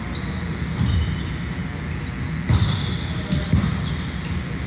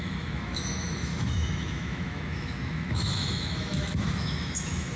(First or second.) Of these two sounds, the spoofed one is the second